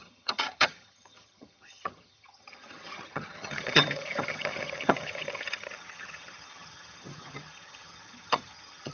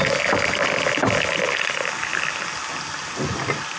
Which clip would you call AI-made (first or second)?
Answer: first